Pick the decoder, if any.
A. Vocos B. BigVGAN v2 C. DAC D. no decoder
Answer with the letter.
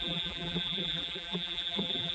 B